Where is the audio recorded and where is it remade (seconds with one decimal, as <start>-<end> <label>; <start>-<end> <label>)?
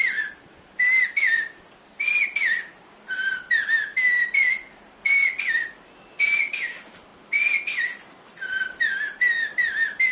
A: 0.0-5.2 recorded; 5.2-6.0 remade; 6.0-10.1 recorded